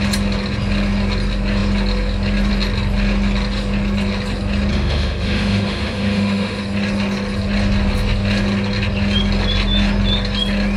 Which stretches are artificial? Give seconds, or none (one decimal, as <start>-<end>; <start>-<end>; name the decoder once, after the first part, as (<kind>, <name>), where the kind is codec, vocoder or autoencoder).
4.7-6.6 (autoencoder, DAC-VAE)